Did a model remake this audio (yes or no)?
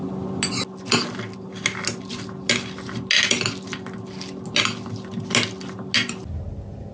no